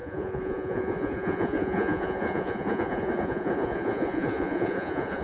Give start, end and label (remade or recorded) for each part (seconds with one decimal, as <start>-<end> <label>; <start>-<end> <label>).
0.0-5.2 remade